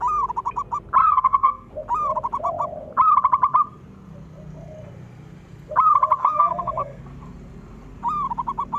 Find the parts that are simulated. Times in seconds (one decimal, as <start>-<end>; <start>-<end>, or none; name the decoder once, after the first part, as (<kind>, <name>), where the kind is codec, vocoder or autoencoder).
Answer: 1.0-1.7 (codec, SNAC); 6.2-7.0